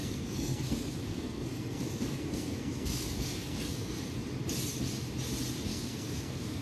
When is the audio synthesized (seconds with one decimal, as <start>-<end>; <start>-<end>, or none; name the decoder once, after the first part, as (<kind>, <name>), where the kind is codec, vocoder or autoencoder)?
0.0-4.0 (codec, SNAC); 5.7-6.6